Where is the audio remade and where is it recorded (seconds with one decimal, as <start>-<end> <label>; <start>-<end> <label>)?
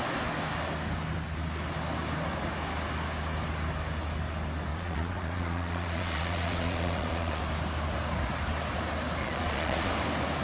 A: 0.0-4.7 recorded; 4.7-7.4 remade; 7.4-9.2 recorded; 9.2-9.9 remade; 9.9-10.4 recorded